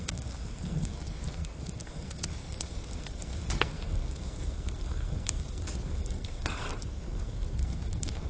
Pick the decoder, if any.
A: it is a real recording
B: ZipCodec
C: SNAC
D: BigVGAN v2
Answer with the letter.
C